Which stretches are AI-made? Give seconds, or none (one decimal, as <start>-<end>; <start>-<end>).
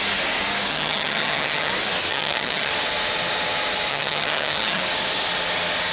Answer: 0.7-1.7; 2.1-2.7; 3.9-4.8